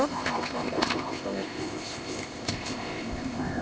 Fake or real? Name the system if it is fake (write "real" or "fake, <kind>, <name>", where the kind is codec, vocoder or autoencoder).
fake, codec, ZipCodec